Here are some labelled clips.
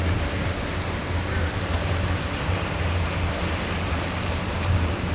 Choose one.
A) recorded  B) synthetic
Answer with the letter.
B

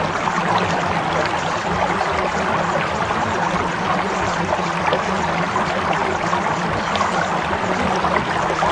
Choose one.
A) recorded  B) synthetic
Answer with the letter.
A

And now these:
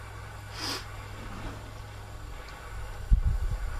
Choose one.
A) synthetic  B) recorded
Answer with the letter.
B